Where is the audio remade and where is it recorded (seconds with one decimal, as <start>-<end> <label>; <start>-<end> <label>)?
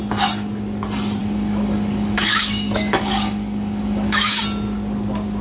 0.0-1.2 recorded; 1.2-4.4 remade; 4.4-5.4 recorded